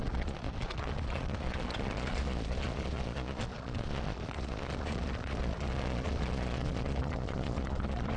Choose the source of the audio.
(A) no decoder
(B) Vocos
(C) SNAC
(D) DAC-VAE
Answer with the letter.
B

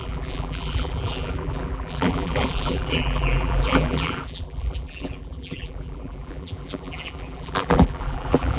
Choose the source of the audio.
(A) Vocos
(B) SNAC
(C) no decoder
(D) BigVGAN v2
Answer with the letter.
D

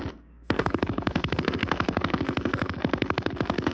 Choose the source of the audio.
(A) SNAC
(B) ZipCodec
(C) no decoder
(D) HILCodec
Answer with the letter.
A